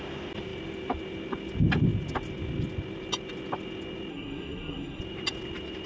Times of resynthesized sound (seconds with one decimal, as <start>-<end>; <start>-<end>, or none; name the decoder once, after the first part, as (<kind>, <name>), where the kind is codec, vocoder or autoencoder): 4.1-5.0 (codec, SNAC)